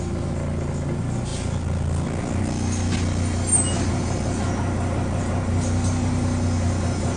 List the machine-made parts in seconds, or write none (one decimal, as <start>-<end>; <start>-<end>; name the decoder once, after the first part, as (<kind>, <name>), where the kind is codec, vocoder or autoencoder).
none